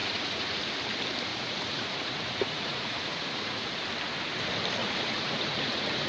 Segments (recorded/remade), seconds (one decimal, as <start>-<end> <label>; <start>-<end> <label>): 0.0-0.7 remade; 0.7-1.3 recorded; 1.3-3.7 remade; 3.7-4.8 recorded; 4.8-6.1 remade